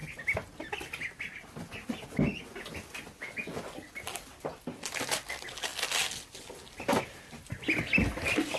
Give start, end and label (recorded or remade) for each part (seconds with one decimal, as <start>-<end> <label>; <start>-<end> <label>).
0.0-8.6 recorded